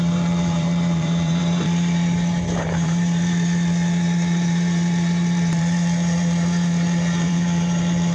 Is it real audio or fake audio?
fake